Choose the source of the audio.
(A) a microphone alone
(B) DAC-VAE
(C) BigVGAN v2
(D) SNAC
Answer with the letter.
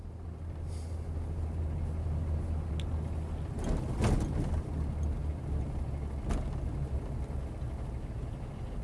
A